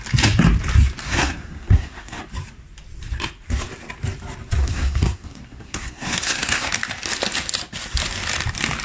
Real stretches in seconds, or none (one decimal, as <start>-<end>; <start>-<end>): 0.0-1.0; 2.2-4.6; 6.7-8.8